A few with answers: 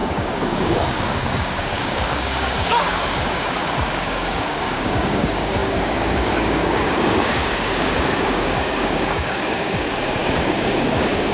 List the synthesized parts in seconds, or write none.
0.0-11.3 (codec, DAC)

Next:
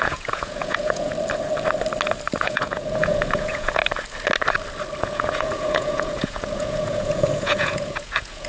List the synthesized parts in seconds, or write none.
0.0-1.1 (vocoder, Vocos); 2.4-3.8; 5.0-8.5

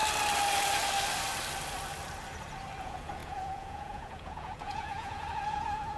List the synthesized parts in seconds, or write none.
2.8-6.0 (vocoder, Vocos)

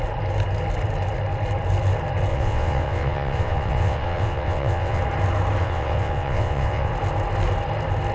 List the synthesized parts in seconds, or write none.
2.3-5.0 (vocoder, WaveNeXt); 5.6-6.9

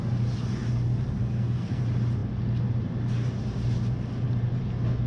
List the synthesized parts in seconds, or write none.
1.2-1.8 (codec, SNAC)

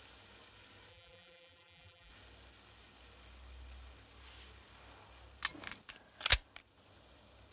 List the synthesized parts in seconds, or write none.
0.9-2.1 (vocoder, BigVGAN v2)

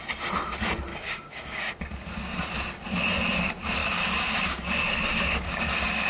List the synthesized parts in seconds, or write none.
0.9-1.9 (codec, DAC); 3.8-6.1